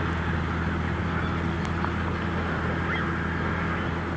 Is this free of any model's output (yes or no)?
yes